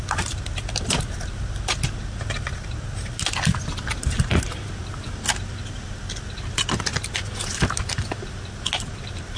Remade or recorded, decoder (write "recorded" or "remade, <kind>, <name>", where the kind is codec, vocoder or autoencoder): recorded